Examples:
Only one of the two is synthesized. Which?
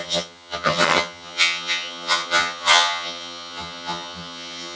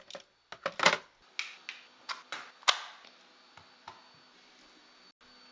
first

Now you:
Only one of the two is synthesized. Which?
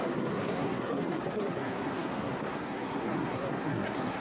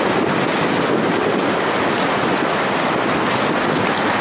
first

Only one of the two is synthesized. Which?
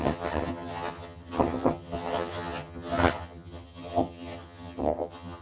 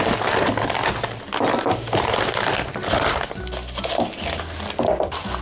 first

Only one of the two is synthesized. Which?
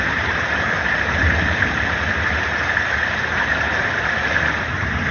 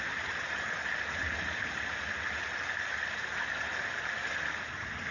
first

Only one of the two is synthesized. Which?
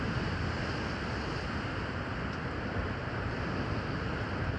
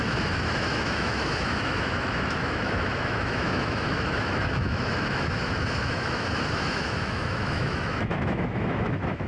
second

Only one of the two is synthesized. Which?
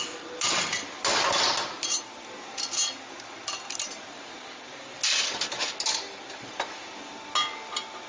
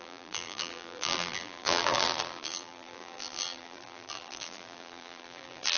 second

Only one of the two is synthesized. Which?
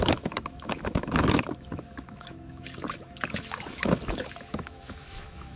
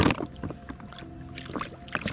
first